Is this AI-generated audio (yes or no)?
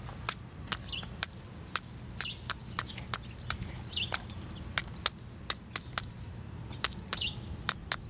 no